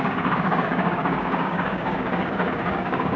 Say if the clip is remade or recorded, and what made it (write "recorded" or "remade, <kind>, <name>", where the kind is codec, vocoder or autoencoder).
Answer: remade, codec, DAC